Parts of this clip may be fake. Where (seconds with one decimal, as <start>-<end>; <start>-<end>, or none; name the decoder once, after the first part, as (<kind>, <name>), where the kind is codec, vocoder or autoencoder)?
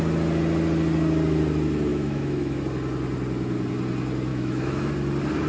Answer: 1.9-2.6 (autoencoder, DAC-VAE); 4.3-4.9